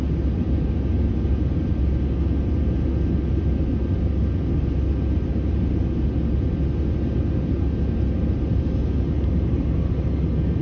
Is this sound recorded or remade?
recorded